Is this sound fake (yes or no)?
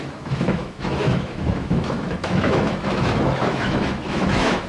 yes